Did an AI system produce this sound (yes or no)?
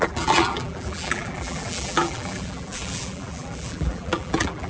yes